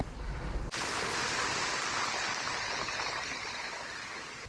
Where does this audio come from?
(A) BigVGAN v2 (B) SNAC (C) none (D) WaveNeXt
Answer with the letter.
C